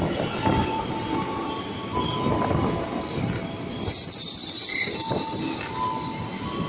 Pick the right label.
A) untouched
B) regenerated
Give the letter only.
A